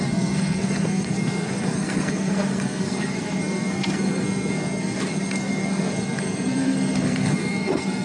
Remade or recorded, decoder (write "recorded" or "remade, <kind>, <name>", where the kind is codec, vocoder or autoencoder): remade, codec, SNAC